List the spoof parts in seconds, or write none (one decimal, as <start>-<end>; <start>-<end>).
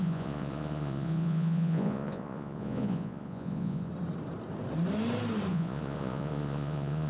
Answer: 0.0-3.9; 5.5-7.1